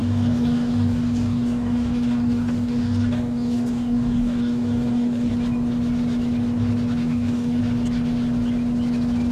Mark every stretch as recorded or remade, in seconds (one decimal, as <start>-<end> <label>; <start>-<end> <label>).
0.0-5.3 remade; 5.3-7.0 recorded; 7.0-7.6 remade; 7.6-9.3 recorded